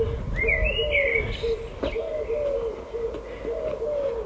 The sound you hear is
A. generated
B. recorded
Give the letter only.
B